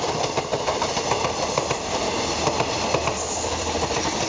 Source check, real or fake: fake